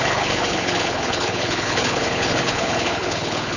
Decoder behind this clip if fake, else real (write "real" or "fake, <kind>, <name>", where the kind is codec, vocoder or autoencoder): fake, codec, HILCodec